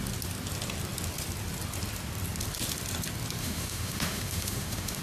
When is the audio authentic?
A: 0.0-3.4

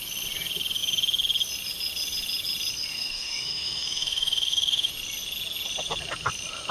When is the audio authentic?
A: 0.0-2.9; 4.9-6.7

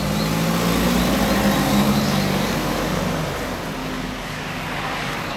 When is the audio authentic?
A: 0.0-1.6; 3.0-3.8

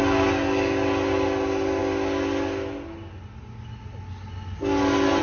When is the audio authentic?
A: 0.0-5.2

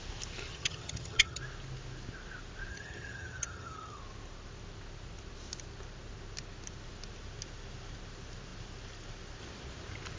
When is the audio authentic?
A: 0.0-0.5; 1.4-2.7; 4.0-10.2

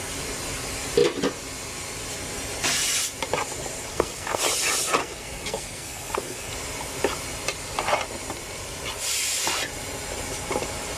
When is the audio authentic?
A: 0.0-3.9; 4.4-5.0; 6.5-11.0

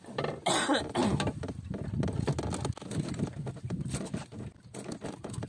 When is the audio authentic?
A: 0.0-5.5

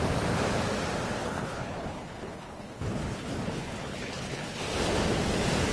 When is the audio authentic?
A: 0.0-1.2; 4.6-5.7